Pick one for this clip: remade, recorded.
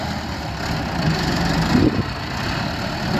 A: remade